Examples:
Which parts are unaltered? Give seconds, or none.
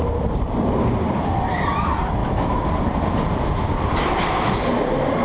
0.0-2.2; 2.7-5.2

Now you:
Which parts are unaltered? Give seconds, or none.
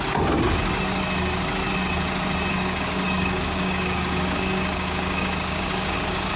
0.0-2.5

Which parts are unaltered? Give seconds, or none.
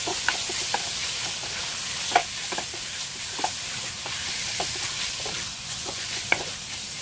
0.5-5.5; 6.5-7.0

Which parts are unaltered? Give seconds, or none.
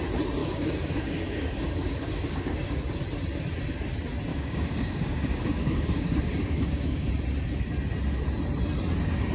0.0-0.4; 2.8-4.3; 7.1-9.3